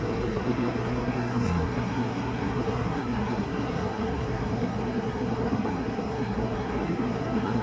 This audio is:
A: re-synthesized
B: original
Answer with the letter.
A